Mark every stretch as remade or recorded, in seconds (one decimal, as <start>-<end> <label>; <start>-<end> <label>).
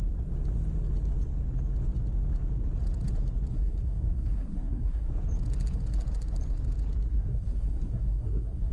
0.0-3.5 recorded; 3.5-5.1 remade; 5.1-7.1 recorded; 7.1-8.7 remade